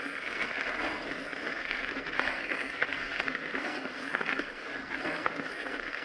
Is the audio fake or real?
fake